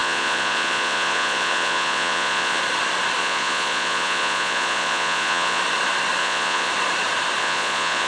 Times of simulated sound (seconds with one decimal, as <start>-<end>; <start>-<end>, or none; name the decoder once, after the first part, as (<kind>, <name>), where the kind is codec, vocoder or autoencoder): 0.0-2.6 (vocoder, Vocos); 3.2-5.6; 6.2-6.7; 7.4-8.1